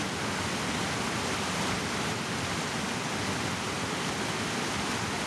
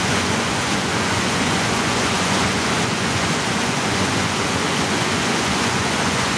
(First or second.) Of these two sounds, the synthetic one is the second